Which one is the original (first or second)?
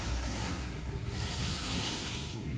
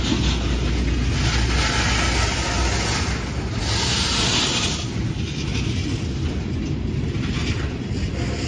second